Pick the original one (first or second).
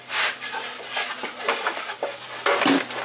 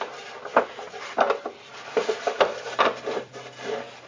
first